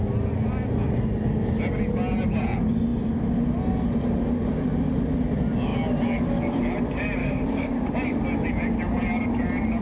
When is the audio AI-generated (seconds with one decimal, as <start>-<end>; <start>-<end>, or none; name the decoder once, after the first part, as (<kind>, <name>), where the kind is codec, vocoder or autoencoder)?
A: 7.2-7.9 (codec, DAC)